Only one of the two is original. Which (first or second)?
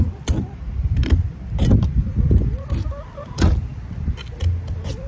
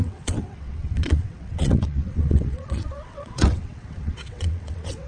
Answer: first